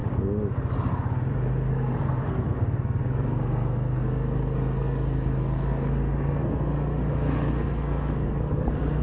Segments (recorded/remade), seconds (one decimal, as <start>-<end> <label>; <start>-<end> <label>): 0.0-1.7 recorded; 1.7-9.0 remade